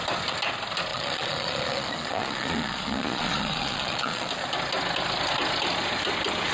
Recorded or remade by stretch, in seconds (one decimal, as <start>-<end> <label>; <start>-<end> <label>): 0.0-0.9 recorded; 0.9-4.3 remade; 4.3-6.5 recorded